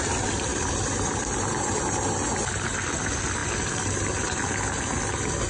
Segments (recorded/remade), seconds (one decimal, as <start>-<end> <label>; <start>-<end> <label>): 0.0-5.5 recorded